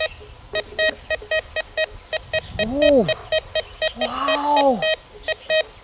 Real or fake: real